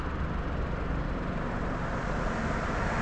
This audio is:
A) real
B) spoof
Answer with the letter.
A